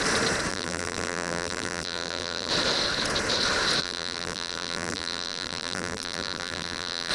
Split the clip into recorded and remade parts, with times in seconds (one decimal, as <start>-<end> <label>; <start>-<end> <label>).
0.0-0.5 recorded; 0.5-2.5 remade; 2.5-3.8 recorded; 3.8-7.1 remade